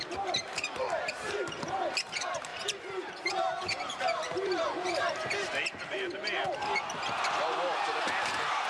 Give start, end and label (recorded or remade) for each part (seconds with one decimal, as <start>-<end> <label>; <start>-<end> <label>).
0.0-6.6 remade; 6.6-7.4 recorded; 7.4-8.7 remade